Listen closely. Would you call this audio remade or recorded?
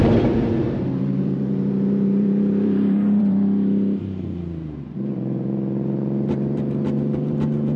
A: remade